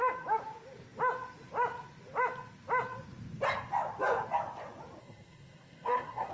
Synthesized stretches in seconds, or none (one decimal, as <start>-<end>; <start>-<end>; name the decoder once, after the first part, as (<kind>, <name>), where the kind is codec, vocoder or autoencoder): 5.0-6.3 (codec, SNAC)